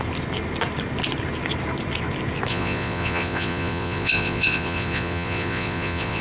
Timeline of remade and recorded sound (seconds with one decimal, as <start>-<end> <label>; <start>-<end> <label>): 0.0-2.5 recorded; 2.5-6.2 remade